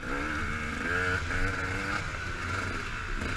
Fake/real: real